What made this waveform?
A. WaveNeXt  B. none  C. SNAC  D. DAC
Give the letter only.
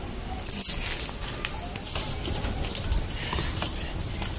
B